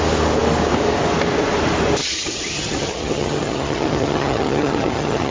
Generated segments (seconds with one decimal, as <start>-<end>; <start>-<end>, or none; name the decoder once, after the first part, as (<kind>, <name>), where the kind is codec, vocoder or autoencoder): 2.0-5.3 (vocoder, HiFi-GAN)